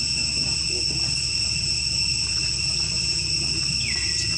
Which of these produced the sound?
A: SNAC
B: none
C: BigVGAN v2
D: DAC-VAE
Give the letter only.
B